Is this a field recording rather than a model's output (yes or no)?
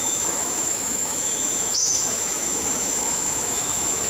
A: no